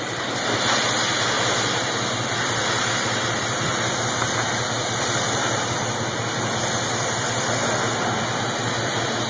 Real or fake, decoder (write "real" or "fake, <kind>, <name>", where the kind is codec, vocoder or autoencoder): real